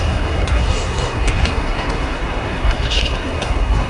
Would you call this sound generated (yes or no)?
yes